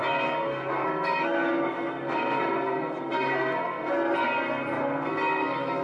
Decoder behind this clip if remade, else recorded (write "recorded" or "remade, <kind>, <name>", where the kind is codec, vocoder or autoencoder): remade, codec, SNAC